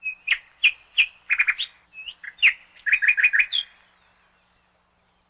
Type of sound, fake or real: real